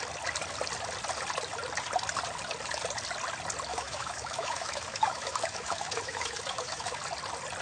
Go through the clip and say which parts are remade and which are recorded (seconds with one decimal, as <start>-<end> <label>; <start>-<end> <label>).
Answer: 0.0-3.7 recorded; 3.7-7.0 remade; 7.0-7.6 recorded